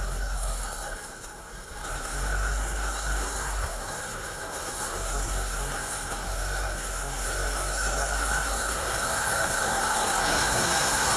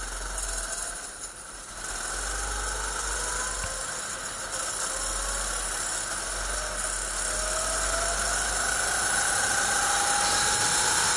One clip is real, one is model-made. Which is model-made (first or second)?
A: first